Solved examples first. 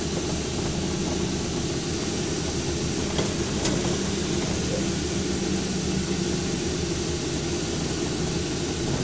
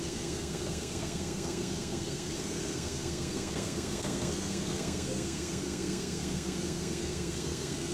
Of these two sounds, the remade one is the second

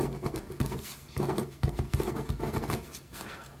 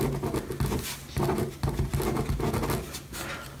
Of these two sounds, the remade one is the first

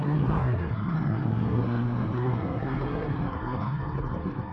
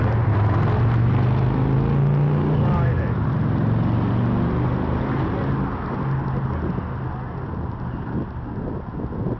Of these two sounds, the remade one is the first